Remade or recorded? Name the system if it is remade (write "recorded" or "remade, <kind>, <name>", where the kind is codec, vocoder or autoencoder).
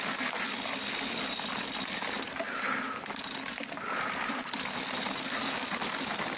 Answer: recorded